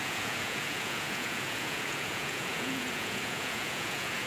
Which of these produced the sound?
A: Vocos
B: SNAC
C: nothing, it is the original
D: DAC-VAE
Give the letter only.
A